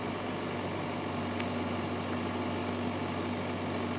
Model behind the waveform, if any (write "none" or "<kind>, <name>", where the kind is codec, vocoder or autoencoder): none